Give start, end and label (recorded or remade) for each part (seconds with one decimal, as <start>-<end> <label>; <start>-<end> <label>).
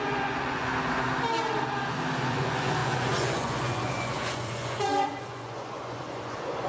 0.0-0.7 remade; 0.7-2.2 recorded; 2.2-6.7 remade